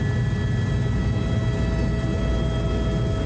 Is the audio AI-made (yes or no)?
no